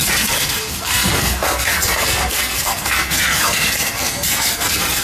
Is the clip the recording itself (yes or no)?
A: no